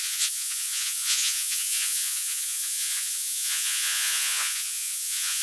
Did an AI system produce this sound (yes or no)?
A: yes